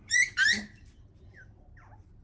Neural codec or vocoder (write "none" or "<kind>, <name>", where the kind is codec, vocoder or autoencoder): none